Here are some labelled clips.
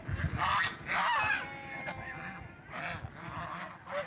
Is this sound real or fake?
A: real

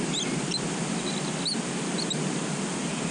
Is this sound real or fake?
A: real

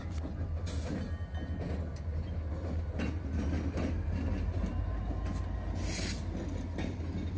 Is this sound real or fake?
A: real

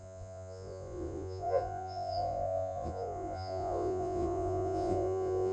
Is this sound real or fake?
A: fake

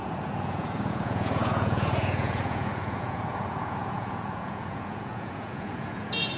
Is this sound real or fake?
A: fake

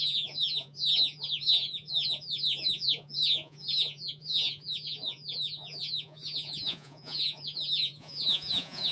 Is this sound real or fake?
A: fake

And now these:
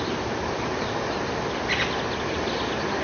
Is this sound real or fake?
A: real